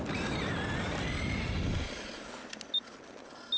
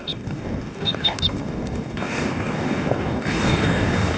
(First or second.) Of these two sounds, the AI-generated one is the second